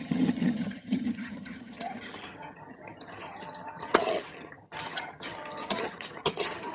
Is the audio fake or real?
fake